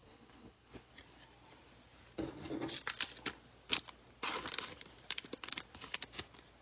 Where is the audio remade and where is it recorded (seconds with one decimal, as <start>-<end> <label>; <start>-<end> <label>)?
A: 0.0-0.9 remade; 0.9-6.6 recorded